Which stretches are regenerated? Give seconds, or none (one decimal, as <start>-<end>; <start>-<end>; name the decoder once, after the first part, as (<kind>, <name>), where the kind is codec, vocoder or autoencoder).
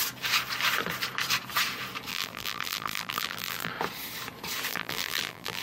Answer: 2.1-3.7 (vocoder, BigVGAN v2); 4.7-5.6